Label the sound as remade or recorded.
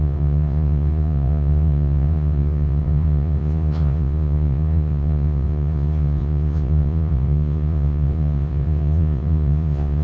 remade